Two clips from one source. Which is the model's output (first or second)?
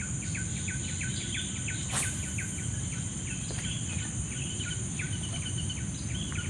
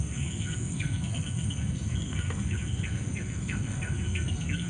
second